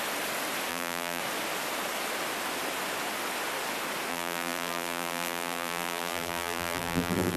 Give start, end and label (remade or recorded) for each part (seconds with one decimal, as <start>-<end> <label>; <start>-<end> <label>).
0.0-0.7 recorded; 0.7-1.2 remade; 1.2-4.1 recorded; 4.1-7.4 remade